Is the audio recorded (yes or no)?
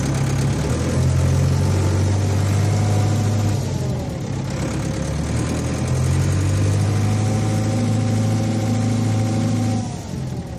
yes